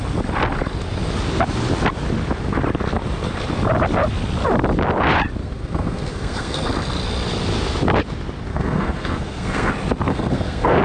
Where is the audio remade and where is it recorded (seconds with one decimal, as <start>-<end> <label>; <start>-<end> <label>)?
0.0-5.4 recorded; 5.4-6.7 remade; 6.7-8.5 recorded; 8.5-9.7 remade; 9.7-10.1 recorded; 10.1-10.8 remade